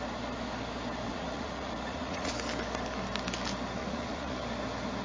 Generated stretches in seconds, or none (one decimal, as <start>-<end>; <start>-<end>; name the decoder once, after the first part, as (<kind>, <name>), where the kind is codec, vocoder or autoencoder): 1.1-2.3 (vocoder, Vocos); 3.8-4.4